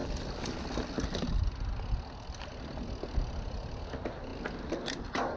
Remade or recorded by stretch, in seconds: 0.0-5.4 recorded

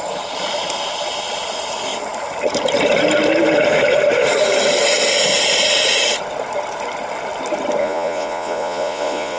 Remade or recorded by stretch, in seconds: 0.0-7.8 recorded; 7.8-9.4 remade

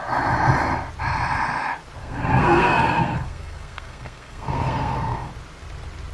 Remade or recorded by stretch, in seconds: 0.0-2.0 recorded; 2.0-5.3 remade; 5.3-6.1 recorded

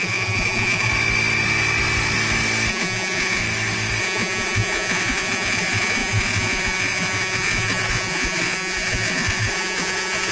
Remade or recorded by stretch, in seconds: 0.0-0.9 remade; 0.9-2.7 recorded; 2.7-3.4 remade; 3.4-4.0 recorded; 4.0-10.3 remade